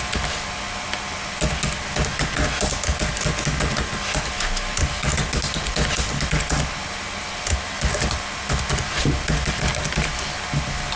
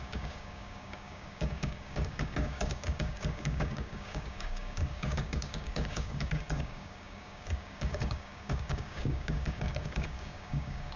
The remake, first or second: second